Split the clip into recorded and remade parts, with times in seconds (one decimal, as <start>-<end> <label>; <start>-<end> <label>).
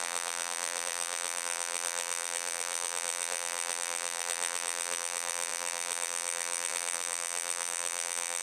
0.0-8.4 remade